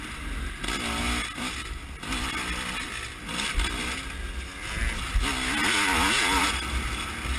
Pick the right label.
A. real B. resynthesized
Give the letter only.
A